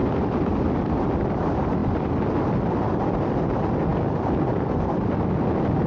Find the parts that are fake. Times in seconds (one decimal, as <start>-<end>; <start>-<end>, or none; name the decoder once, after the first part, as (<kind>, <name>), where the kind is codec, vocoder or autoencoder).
none